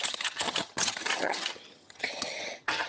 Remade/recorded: remade